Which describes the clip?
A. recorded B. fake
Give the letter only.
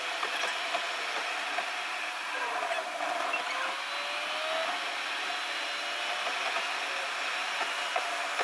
A